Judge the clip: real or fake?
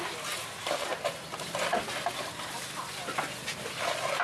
real